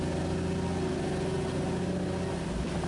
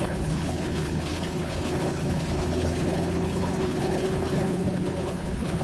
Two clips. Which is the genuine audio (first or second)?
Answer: first